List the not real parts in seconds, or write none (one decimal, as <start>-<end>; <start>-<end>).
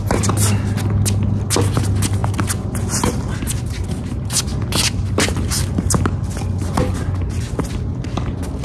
none